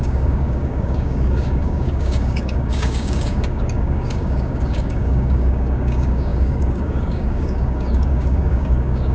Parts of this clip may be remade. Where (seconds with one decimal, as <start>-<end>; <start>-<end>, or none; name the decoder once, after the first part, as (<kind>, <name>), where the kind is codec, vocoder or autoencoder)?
0.0-9.1 (codec, DAC)